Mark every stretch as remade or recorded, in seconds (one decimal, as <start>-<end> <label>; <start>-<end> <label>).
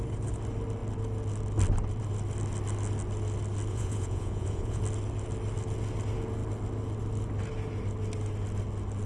0.0-3.7 recorded; 3.7-4.8 remade; 4.8-9.1 recorded